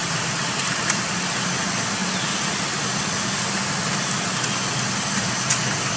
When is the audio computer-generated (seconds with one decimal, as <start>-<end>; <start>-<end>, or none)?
none